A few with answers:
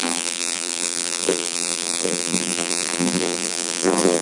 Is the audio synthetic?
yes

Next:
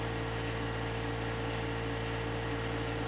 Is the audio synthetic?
no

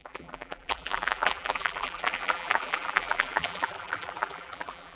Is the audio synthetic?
yes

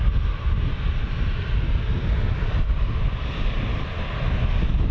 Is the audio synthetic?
no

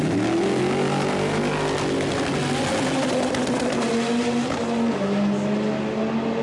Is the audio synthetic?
no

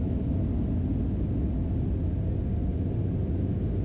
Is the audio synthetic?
no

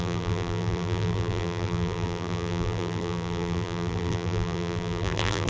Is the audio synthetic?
yes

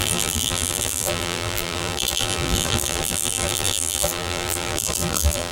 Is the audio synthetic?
yes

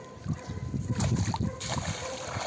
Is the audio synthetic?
no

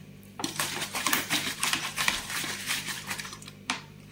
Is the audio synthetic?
yes